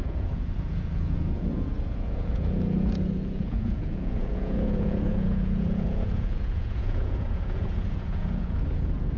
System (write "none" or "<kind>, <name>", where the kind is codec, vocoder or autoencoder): vocoder, Vocos